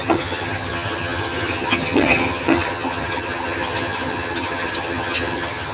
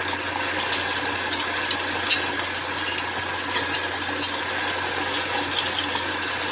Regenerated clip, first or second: first